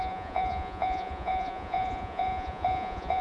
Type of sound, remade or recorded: remade